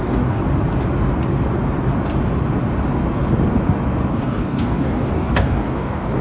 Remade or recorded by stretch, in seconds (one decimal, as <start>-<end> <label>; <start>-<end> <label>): 0.0-0.4 remade; 0.4-4.1 recorded; 4.1-6.2 remade